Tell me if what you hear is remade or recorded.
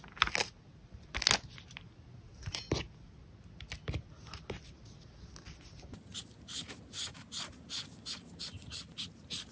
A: recorded